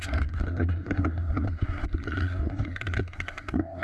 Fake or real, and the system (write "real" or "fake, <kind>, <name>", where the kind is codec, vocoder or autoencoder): fake, codec, SNAC